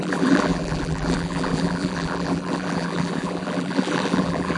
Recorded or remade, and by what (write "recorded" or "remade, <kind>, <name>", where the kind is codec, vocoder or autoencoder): remade, vocoder, BigVGAN v2